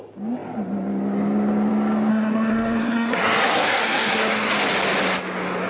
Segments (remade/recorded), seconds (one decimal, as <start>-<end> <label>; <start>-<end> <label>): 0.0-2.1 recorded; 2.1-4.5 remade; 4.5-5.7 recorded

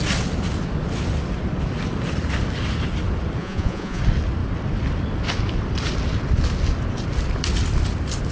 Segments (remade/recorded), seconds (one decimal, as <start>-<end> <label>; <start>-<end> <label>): 0.0-3.4 recorded; 3.4-4.0 remade; 4.0-8.3 recorded

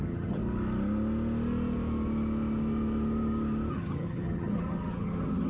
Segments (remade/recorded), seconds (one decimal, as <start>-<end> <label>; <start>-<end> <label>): 0.0-0.4 remade; 0.4-3.7 recorded; 3.7-5.5 remade

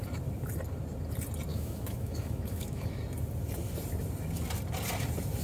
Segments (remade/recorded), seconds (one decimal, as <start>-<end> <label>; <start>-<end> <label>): 0.0-1.5 recorded; 1.5-3.0 remade; 3.0-5.4 recorded

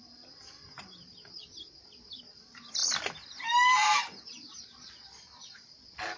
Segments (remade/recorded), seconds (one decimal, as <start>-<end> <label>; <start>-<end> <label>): 0.0-6.2 remade

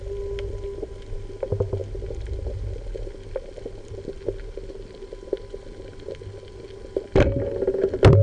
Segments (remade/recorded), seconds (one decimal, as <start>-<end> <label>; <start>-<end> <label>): 0.0-8.2 recorded